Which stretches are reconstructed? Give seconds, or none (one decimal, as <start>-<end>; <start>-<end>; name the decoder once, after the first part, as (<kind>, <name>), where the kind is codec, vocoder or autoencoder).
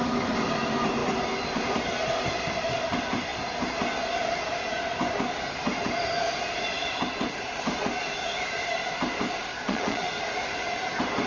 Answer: 9.5-10.1 (vocoder, Vocos)